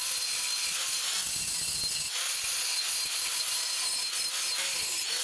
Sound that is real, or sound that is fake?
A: real